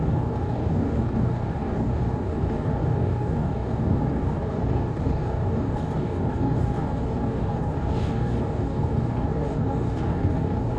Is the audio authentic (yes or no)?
no